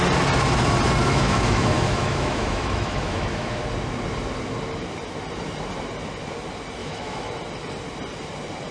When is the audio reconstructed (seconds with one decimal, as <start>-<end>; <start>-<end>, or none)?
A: 1.0-3.6; 6.8-7.3